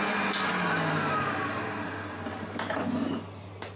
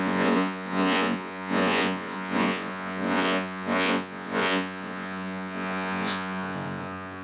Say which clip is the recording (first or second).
first